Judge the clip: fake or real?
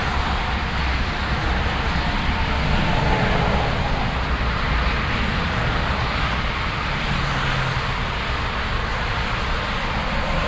real